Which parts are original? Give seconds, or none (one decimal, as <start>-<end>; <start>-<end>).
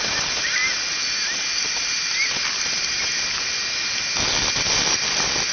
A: 0.0-5.5